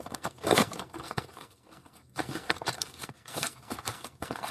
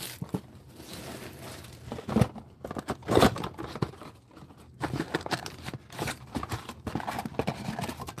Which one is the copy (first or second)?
first